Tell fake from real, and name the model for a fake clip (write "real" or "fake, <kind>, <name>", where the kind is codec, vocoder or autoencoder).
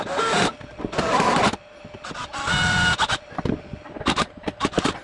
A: real